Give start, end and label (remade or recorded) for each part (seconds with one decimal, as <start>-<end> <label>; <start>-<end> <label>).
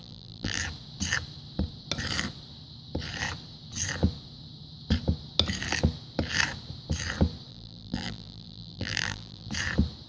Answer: 0.0-0.6 remade; 0.6-7.5 recorded; 7.5-9.5 remade; 9.5-10.1 recorded